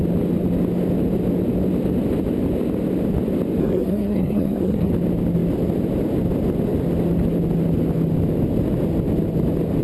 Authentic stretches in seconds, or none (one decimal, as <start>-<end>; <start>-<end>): 0.0-3.6; 4.9-9.8